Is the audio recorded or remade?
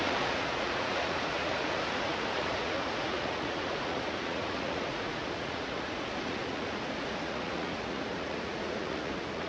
remade